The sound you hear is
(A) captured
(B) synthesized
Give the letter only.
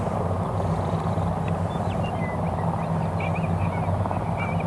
A